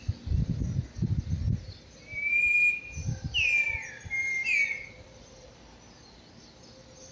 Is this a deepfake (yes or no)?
no